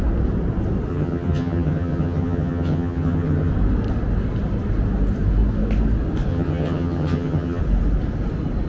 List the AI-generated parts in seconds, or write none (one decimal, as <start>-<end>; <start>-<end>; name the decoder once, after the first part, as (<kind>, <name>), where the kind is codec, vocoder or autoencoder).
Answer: 0.9-3.5 (vocoder, HiFi-GAN); 6.3-7.6